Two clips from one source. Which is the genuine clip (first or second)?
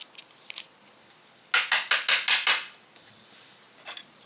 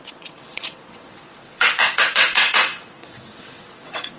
first